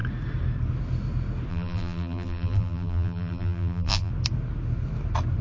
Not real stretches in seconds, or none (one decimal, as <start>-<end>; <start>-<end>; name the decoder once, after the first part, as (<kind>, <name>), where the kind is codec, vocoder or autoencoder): 1.5-4.1 (vocoder, BigVGAN v2)